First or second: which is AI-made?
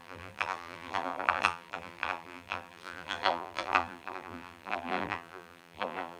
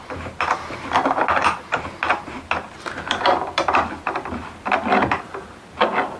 first